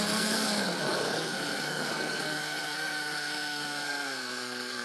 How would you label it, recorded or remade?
remade